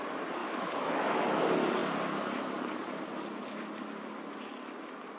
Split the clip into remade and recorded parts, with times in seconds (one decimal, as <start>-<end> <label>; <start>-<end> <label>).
0.0-0.4 recorded; 0.4-1.4 remade; 1.4-5.2 recorded